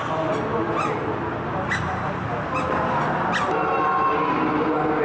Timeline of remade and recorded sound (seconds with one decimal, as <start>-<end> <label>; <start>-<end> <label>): 0.0-5.0 recorded